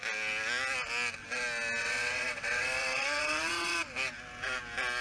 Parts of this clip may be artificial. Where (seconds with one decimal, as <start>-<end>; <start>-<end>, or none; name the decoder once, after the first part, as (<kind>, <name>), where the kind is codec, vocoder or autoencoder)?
1.8-3.8 (vocoder, WaveNeXt)